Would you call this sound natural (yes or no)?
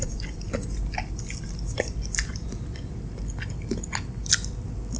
yes